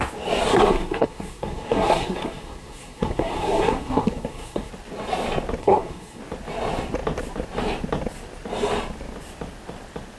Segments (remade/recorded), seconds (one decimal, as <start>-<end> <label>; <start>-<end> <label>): 0.0-0.5 recorded; 0.5-4.7 remade; 4.7-5.6 recorded; 5.6-6.2 remade; 6.2-10.2 recorded